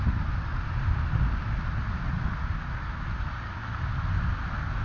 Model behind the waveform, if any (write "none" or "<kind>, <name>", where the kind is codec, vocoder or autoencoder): none